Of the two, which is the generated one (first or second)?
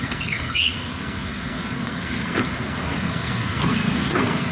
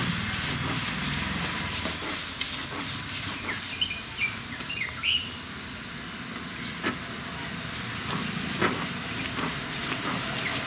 first